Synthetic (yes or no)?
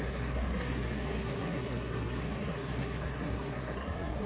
yes